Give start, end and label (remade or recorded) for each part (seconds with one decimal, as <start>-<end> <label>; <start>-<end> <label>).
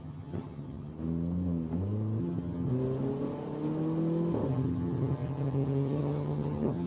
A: 0.0-0.9 remade; 0.9-2.2 recorded; 2.2-2.7 remade; 2.7-4.5 recorded; 4.5-6.9 remade